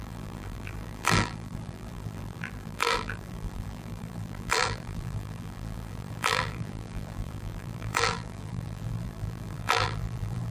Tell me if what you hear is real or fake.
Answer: fake